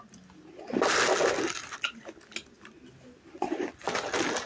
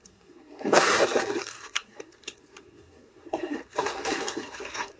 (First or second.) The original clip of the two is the first